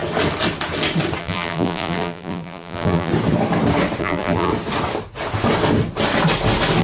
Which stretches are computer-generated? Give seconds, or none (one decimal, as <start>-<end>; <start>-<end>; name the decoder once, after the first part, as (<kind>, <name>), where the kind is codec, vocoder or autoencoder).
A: 1.2-3.1 (vocoder, BigVGAN v2); 4.0-4.5